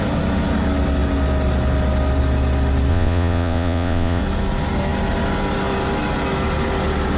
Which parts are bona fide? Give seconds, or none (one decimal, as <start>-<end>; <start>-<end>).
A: 0.0-2.9; 4.2-7.2